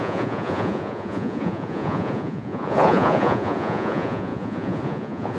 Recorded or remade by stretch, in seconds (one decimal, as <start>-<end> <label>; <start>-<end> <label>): 0.0-5.4 remade